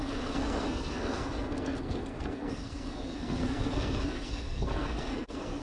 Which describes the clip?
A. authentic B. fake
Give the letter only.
B